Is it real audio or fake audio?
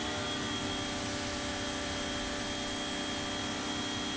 real